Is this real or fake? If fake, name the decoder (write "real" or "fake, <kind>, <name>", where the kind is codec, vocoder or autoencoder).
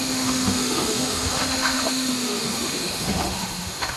fake, autoencoder, DAC-VAE